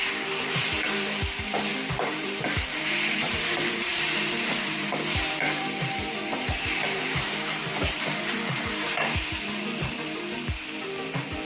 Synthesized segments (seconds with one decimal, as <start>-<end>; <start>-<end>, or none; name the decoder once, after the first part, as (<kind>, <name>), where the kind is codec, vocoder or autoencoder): 0.0-11.4 (vocoder, BigVGAN v2)

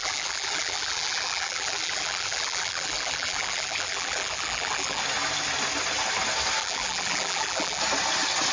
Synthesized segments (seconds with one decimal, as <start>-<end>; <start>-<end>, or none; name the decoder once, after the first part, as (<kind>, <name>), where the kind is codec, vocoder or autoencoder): 0.0-5.0 (vocoder, BigVGAN v2); 6.6-7.8

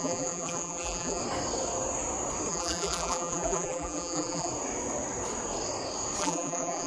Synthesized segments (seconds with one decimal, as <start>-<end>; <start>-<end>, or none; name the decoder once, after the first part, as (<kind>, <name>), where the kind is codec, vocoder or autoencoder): 0.0-1.2 (vocoder, BigVGAN v2); 2.5-4.5; 6.2-6.9

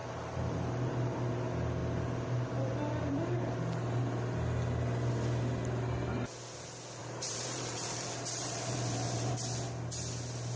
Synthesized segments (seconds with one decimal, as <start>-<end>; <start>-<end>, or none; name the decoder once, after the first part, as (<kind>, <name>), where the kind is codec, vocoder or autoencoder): 0.0-0.9 (vocoder, BigVGAN v2); 7.0-9.3

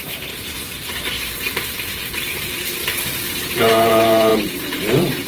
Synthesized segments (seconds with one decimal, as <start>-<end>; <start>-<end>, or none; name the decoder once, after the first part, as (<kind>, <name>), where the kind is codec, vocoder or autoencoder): 0.0-5.3 (vocoder, BigVGAN v2)

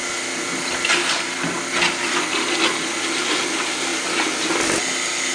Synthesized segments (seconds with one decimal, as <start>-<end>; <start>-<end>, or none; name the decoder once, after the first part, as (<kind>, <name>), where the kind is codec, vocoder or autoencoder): 3.2-3.9 (vocoder, BigVGAN v2)